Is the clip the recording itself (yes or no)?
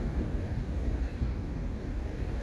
no